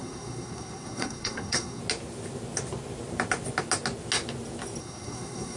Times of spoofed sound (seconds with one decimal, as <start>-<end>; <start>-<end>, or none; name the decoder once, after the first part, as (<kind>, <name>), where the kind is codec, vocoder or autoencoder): 0.0-1.8 (codec, SNAC); 4.8-5.6